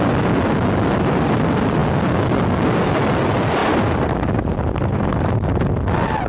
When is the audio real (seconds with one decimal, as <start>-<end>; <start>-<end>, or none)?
0.0-3.6; 5.7-6.3